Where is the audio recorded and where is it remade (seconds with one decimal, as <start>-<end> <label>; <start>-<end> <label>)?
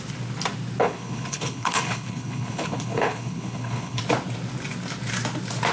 0.0-0.8 recorded; 0.8-4.0 remade; 4.0-5.7 recorded